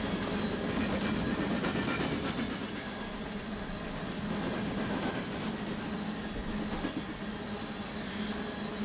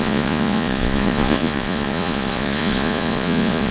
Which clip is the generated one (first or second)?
second